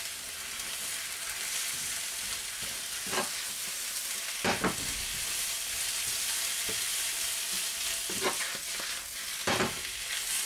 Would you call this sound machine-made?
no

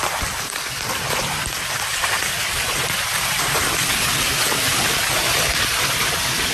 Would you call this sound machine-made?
yes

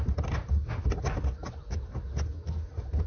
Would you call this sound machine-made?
no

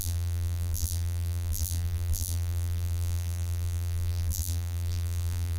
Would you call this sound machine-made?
yes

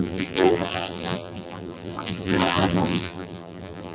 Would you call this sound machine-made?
yes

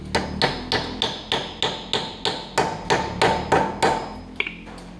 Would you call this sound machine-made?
no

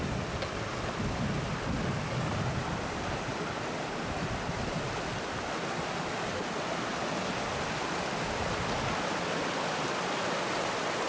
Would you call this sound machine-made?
no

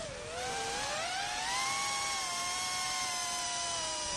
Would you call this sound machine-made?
no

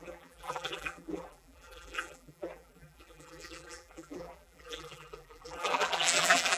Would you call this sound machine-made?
yes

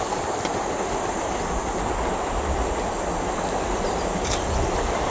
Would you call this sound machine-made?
no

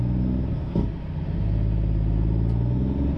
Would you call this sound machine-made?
no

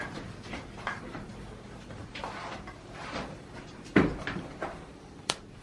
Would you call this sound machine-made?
yes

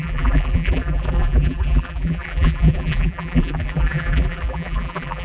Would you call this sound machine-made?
yes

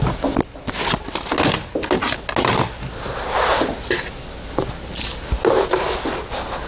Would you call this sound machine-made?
no